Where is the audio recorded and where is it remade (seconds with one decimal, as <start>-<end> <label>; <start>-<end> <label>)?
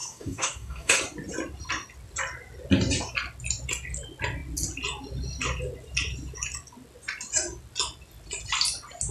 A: 0.0-1.0 remade; 1.0-9.1 recorded